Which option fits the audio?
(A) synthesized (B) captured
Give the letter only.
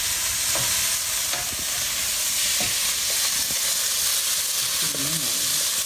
B